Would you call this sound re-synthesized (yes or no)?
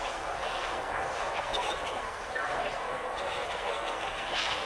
yes